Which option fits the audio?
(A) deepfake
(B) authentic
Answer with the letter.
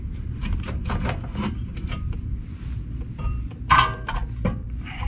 A